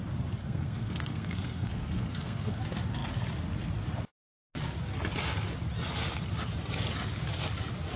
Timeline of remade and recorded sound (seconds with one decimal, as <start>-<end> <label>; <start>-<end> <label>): 0.0-0.4 recorded; 0.4-2.6 remade; 2.6-8.0 recorded